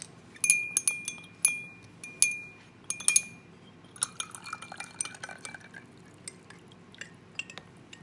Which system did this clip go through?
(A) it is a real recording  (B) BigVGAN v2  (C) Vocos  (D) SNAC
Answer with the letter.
A